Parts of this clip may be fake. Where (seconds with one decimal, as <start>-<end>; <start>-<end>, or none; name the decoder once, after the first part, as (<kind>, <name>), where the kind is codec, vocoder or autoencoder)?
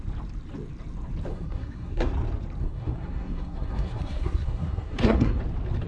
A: 1.3-2.1 (codec, SNAC); 2.6-5.4